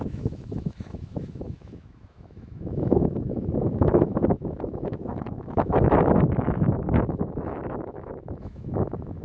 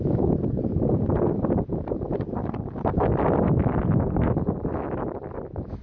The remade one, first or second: first